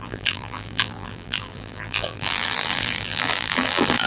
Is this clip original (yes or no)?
no